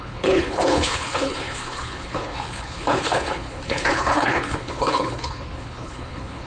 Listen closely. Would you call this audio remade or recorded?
remade